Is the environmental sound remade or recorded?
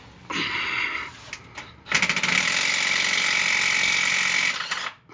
recorded